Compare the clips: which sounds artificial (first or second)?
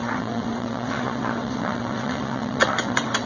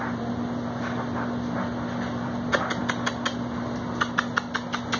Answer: first